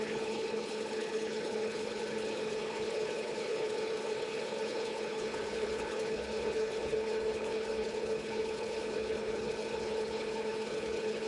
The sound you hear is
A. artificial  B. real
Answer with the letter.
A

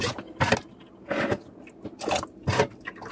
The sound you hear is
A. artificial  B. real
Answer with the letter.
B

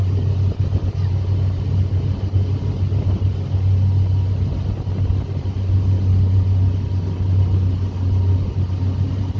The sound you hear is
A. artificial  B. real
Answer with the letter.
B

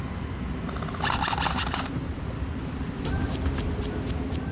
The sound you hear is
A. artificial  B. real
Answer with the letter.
B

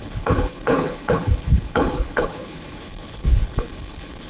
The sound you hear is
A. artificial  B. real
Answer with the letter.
A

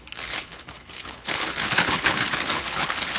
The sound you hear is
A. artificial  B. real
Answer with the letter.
A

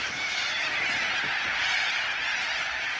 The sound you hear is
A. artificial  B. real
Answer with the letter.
B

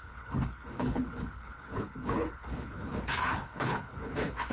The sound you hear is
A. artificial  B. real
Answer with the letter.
A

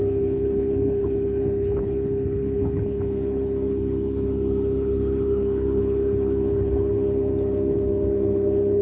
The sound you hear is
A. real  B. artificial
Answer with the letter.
B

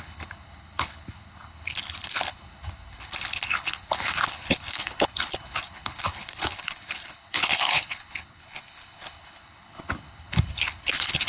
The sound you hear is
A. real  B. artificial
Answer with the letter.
B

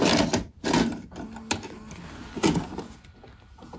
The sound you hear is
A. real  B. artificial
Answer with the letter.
A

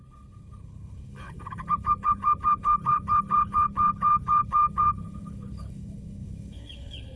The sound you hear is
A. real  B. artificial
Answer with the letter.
B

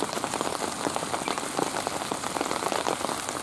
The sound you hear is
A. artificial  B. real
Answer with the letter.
B